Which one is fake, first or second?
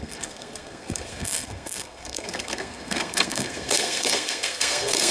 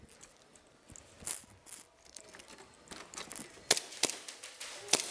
first